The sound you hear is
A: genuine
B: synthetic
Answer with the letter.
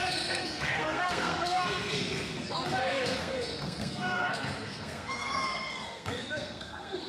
B